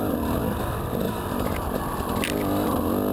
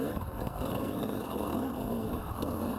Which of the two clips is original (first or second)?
first